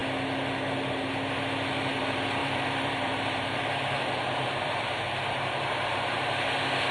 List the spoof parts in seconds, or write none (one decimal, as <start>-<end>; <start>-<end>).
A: 2.4-6.5

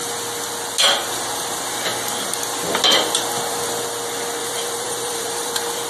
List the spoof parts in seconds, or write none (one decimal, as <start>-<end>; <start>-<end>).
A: 4.4-5.5

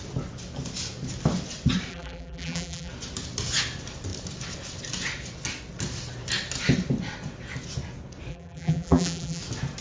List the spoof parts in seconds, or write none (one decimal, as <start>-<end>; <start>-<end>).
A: 1.9-2.9; 8.3-9.4

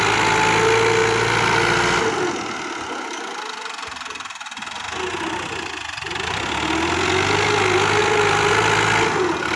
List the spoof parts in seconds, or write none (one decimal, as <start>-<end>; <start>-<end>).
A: 8.0-8.5

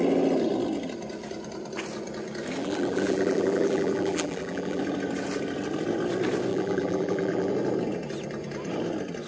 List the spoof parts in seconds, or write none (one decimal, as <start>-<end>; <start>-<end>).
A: 2.6-4.8; 6.5-7.5